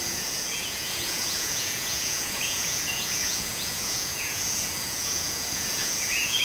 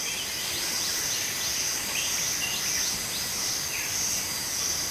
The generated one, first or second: first